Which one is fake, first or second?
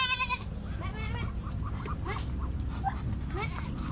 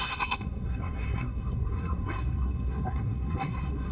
second